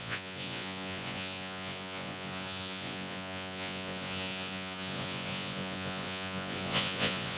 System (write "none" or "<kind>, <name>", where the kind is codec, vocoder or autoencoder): vocoder, Vocos